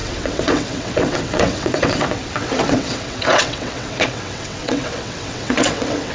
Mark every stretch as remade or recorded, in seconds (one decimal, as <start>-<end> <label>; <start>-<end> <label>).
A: 0.0-6.1 remade

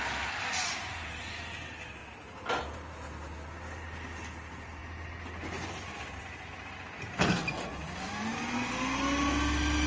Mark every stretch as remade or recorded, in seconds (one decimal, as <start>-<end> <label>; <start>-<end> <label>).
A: 0.0-9.9 recorded

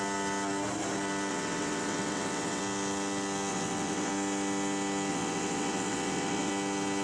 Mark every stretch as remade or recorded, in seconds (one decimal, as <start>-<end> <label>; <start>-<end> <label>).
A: 0.0-1.3 recorded; 1.3-2.6 remade; 2.6-3.5 recorded; 3.5-4.1 remade; 4.1-5.1 recorded; 5.1-6.5 remade; 6.5-7.0 recorded

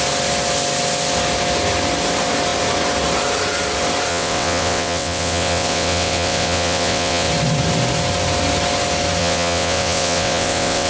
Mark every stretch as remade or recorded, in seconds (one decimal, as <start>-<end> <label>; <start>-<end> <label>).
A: 0.0-4.1 recorded; 4.1-7.3 remade; 7.3-9.2 recorded; 9.2-10.9 remade

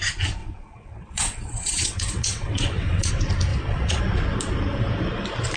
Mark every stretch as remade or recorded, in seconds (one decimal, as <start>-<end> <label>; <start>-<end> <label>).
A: 0.0-0.4 recorded; 0.4-3.1 remade; 3.1-3.5 recorded; 3.5-4.0 remade; 4.0-5.6 recorded